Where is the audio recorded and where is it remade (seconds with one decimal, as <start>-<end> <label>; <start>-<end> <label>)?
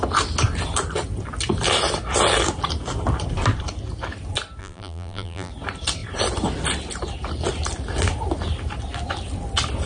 0.0-4.6 recorded; 4.6-5.5 remade; 5.5-9.9 recorded